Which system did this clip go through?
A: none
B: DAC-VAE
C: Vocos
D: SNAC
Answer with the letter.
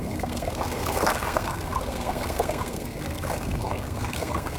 D